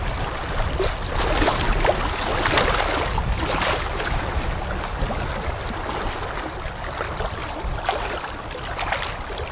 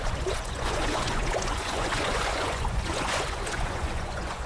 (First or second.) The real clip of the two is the first